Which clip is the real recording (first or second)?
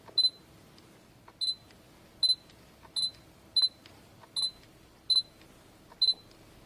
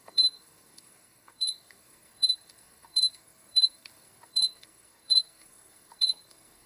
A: first